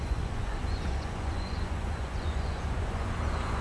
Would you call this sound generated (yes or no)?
yes